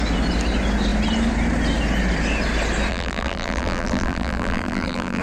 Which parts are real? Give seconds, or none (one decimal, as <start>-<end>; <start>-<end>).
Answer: 0.0-2.9